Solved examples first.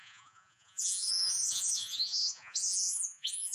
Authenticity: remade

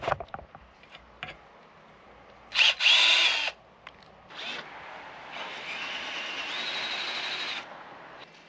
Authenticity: recorded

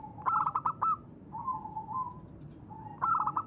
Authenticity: recorded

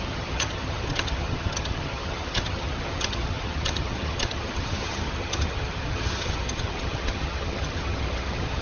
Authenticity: remade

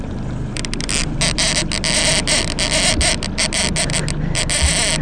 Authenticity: recorded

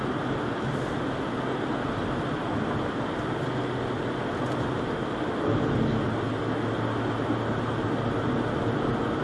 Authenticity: recorded